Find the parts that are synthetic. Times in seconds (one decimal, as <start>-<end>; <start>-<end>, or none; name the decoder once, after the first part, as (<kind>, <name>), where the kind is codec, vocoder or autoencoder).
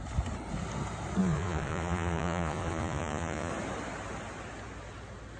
1.2-3.5 (vocoder, Vocos)